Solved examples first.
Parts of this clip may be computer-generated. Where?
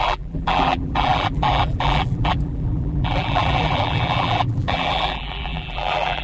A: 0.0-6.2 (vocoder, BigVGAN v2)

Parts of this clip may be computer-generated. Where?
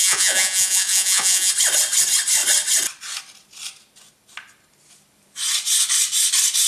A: 0.0-1.5 (vocoder, Vocos)